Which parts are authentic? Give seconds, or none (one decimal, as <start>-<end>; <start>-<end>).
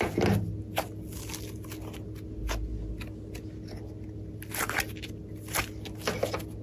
0.0-6.6